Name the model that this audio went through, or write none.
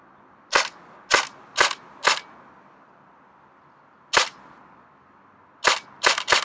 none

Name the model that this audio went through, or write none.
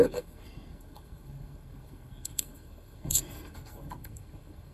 codec, SNAC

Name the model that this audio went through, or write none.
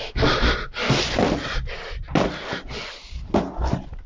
none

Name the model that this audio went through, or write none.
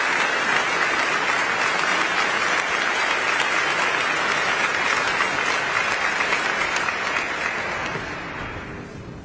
none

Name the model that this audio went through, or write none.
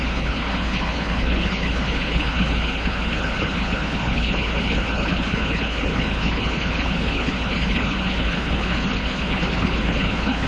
codec, HILCodec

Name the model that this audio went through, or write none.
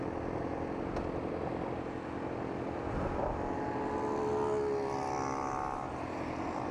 none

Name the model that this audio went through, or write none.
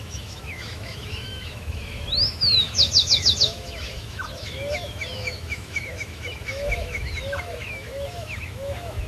autoencoder, DAC-VAE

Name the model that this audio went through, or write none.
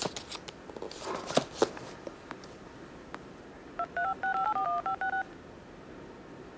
none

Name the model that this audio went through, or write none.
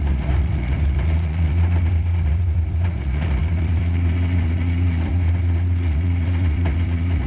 vocoder, Vocos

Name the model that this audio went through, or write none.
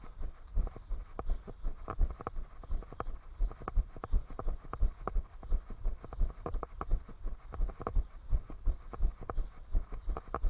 none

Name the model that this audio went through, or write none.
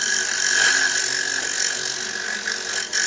none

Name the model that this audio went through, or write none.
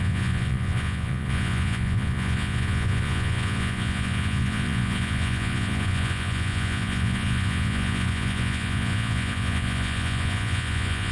vocoder, Vocos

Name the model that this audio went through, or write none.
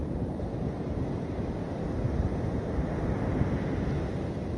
none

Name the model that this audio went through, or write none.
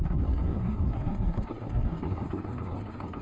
codec, SNAC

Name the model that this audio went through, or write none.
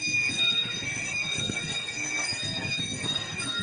codec, SNAC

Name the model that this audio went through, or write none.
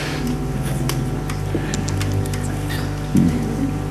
none